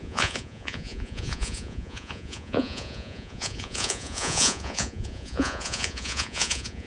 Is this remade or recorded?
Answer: remade